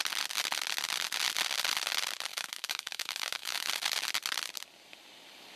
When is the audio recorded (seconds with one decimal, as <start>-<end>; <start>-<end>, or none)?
0.0-2.3; 3.7-5.6